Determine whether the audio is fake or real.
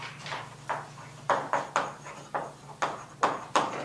real